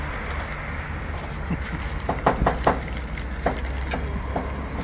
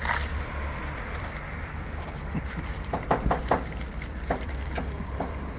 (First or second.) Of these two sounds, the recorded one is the first